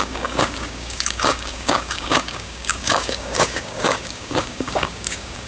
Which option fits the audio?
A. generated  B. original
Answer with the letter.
A